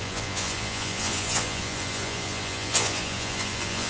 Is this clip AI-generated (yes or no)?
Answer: yes